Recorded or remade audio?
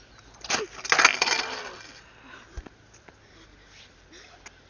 recorded